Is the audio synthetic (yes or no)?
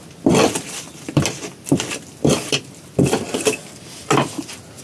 no